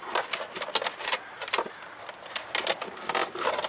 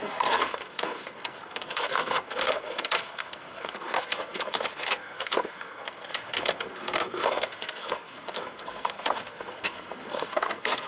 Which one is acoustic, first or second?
first